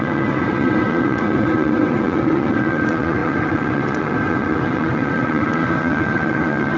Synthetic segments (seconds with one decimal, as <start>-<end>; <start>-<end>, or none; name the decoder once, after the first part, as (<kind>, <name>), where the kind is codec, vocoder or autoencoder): 0.0-6.8 (vocoder, WaveNeXt)